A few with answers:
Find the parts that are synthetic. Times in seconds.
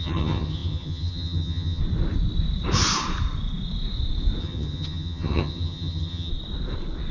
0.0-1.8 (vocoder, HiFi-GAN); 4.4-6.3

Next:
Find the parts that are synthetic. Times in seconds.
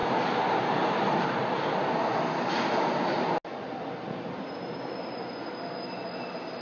none